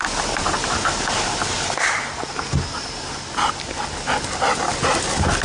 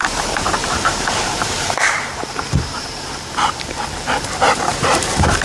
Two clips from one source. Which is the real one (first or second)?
first